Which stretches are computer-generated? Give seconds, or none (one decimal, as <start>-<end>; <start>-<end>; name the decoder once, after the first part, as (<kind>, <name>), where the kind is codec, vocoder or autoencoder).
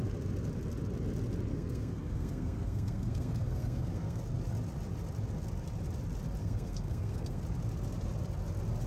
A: 1.5-4.2 (codec, SNAC); 6.4-7.4